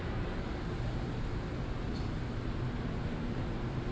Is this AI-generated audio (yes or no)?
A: no